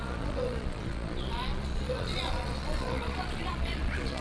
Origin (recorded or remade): remade